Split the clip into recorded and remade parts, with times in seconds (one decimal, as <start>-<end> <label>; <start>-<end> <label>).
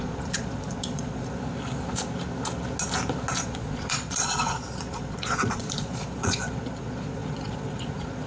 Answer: 0.0-1.2 remade; 1.2-3.4 recorded; 3.4-8.3 remade